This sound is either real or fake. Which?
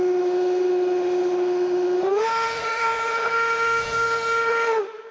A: fake